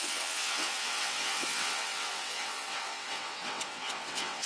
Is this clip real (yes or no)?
no